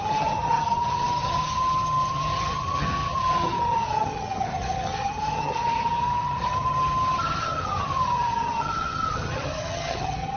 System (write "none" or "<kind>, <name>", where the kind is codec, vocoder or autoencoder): vocoder, HiFi-GAN